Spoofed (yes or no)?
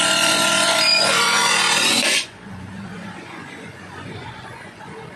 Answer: yes